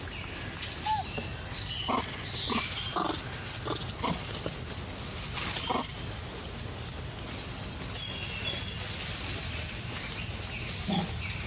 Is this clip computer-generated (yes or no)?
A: no